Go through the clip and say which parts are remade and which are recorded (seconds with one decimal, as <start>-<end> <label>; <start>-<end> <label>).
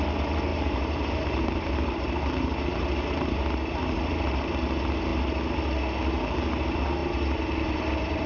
0.0-0.5 recorded; 0.5-2.8 remade; 2.8-7.0 recorded; 7.0-8.3 remade